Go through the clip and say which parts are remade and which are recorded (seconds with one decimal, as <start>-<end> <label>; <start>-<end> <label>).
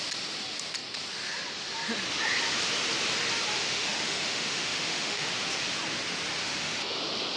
0.0-3.6 recorded; 3.6-5.3 remade; 5.3-6.4 recorded; 6.4-7.0 remade; 7.0-7.4 recorded